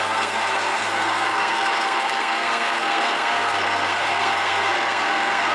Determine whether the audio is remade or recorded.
remade